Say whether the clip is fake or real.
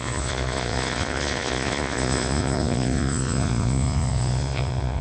fake